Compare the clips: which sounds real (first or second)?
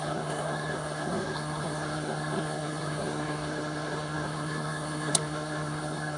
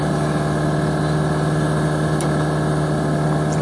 second